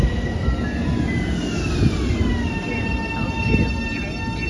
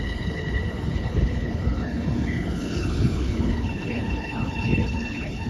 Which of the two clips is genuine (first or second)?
first